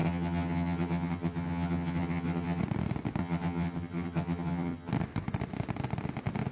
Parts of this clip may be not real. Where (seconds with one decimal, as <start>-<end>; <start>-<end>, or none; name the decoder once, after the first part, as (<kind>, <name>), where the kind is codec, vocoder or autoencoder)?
0.0-2.6 (vocoder, HiFi-GAN); 3.2-4.9